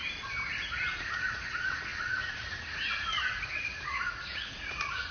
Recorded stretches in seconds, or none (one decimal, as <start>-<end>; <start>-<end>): 0.0-1.0